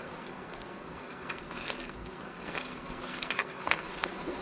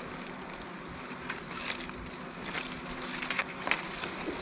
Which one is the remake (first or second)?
first